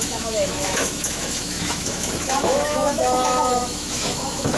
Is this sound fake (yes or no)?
yes